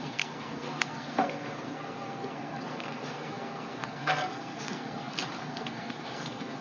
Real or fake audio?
fake